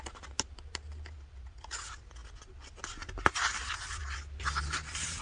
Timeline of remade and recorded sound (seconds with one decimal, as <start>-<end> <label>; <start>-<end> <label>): 0.0-4.0 recorded; 4.0-5.2 remade